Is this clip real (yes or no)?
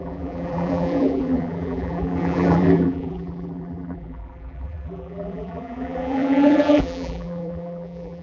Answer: no